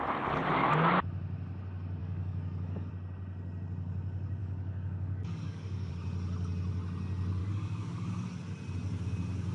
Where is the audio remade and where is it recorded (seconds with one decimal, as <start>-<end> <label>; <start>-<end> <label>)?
0.0-2.0 recorded; 2.0-2.9 remade; 2.9-4.4 recorded; 4.4-5.9 remade; 5.9-7.4 recorded; 7.4-8.1 remade; 8.1-9.5 recorded